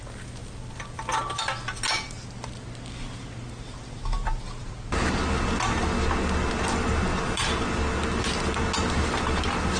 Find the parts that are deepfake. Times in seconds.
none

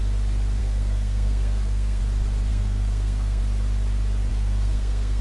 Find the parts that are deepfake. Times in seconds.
0.6-2.0; 2.5-3.4; 4.3-5.2

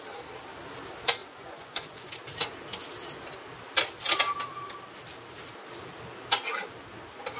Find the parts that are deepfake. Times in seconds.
1.2-2.1

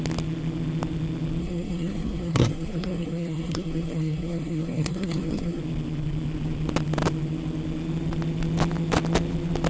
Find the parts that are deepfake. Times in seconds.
1.4-5.6

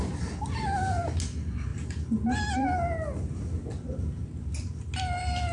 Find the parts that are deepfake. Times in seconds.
none

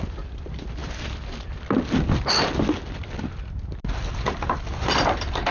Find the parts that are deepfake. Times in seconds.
0.0-0.8; 4.1-5.5